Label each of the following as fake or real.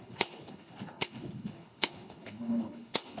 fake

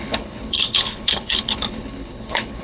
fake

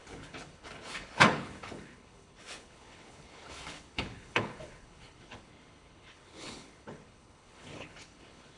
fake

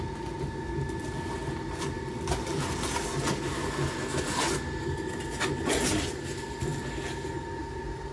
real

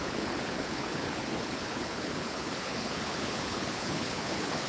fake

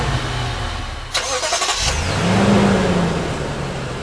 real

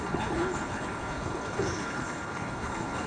fake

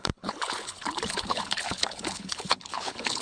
fake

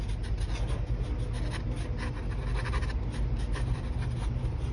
real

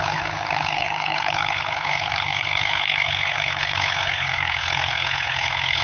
fake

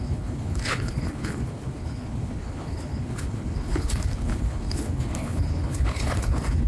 fake